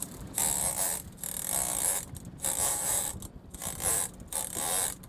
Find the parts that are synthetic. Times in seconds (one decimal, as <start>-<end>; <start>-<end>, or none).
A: 0.0-0.4; 2.7-3.1